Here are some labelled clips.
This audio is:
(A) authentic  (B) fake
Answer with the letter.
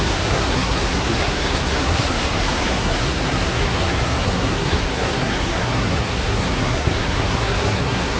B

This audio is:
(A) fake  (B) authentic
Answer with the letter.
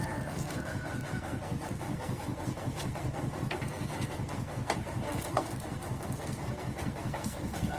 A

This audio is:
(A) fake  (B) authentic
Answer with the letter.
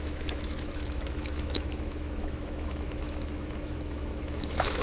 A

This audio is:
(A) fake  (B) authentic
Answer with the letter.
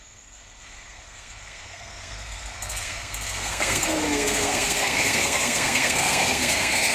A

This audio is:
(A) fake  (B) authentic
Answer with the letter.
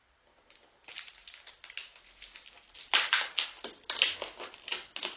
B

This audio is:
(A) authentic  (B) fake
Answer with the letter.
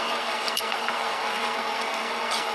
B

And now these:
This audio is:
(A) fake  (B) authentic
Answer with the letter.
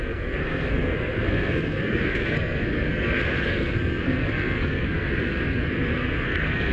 A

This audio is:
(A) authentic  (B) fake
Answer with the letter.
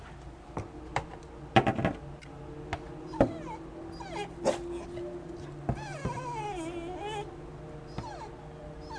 A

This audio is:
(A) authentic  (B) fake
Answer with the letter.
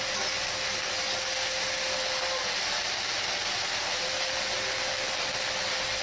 A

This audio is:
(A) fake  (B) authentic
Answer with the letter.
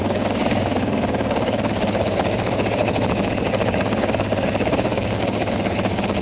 A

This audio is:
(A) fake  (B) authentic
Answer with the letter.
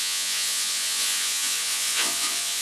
A